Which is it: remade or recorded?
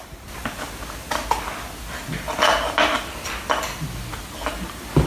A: recorded